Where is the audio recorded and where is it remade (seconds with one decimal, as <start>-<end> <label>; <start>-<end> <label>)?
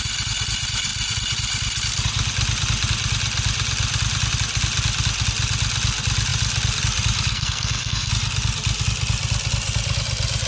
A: 0.0-7.3 recorded; 7.3-8.1 remade; 8.1-10.5 recorded